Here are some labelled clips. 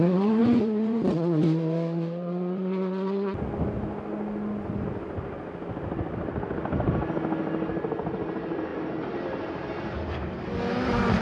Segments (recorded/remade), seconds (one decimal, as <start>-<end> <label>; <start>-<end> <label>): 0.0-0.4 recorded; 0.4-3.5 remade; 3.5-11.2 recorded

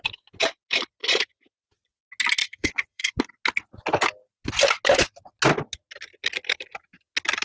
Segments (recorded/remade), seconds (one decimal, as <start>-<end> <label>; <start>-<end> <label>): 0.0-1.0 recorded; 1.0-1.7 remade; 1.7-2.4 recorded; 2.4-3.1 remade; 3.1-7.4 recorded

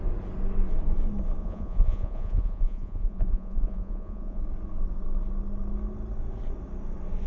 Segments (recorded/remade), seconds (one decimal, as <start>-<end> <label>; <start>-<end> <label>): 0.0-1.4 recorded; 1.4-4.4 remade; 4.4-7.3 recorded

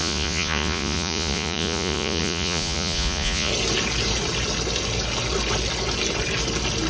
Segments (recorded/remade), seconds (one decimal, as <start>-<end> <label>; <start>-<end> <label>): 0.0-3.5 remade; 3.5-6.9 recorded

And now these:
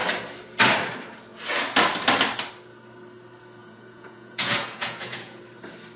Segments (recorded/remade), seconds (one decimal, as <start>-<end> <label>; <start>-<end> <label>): 0.0-3.6 recorded; 3.6-5.4 remade; 5.4-6.0 recorded

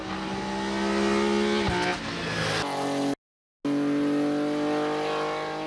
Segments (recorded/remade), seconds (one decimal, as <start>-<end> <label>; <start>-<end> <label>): 0.0-5.7 recorded

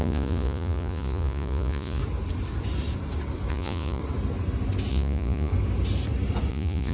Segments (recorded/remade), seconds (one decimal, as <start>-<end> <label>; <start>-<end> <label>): 0.0-2.0 remade; 2.0-3.5 recorded; 3.5-4.0 remade; 4.0-4.9 recorded; 4.9-5.5 remade; 5.5-6.5 recorded; 6.5-6.9 remade

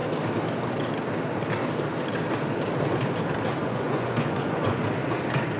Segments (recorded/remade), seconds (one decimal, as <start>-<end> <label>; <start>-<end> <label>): 0.0-3.6 recorded; 3.6-4.8 remade; 4.8-5.6 recorded